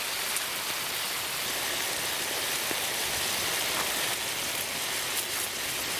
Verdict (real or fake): real